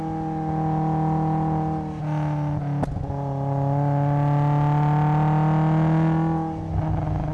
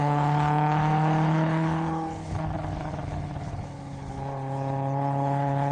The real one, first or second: first